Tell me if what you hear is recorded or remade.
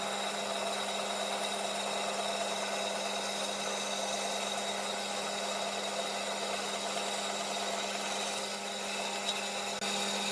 recorded